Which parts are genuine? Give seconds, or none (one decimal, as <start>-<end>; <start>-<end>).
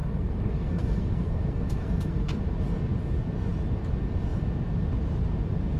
2.4-5.8